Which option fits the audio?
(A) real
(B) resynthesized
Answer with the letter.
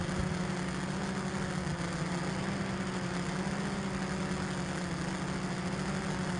A